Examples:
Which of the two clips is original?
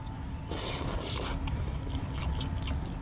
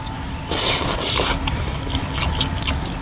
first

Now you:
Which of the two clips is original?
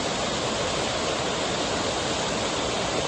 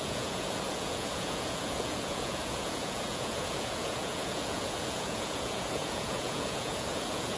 first